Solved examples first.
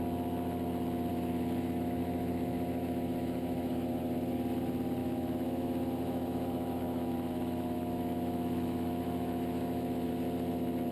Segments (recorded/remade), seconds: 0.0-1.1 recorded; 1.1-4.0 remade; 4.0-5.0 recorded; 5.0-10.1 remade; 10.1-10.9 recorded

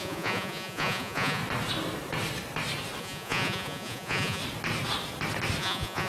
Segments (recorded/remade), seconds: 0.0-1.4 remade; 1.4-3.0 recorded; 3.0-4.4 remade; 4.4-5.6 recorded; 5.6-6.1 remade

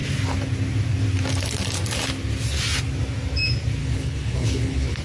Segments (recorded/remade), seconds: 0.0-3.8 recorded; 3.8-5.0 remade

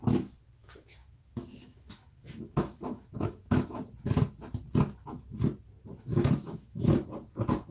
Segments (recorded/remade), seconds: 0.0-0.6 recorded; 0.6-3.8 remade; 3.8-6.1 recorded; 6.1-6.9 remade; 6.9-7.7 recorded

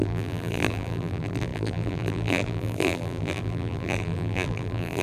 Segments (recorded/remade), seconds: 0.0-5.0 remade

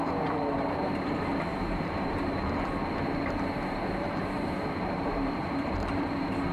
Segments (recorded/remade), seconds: 0.0-6.5 remade